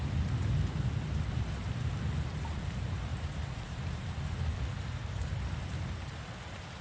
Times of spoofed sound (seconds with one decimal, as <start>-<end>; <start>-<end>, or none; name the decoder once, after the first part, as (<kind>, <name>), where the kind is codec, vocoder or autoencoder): 3.1-4.1 (vocoder, BigVGAN v2); 5.0-6.1